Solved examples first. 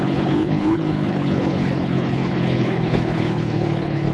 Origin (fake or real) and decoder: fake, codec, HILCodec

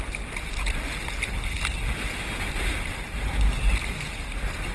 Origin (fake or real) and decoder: real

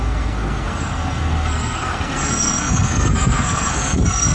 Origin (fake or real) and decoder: fake, codec, SNAC